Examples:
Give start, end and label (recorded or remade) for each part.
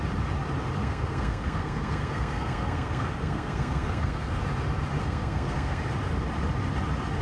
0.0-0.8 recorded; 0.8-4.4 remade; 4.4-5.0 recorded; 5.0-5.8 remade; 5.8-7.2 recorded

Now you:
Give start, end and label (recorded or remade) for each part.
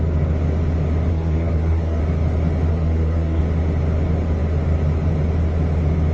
0.0-1.1 recorded; 1.1-2.0 remade; 2.0-2.7 recorded; 2.7-3.4 remade; 3.4-6.1 recorded